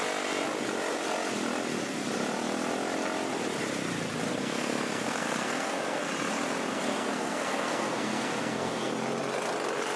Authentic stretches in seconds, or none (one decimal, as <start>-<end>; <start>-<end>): 0.0-4.3; 6.1-6.7; 8.9-10.0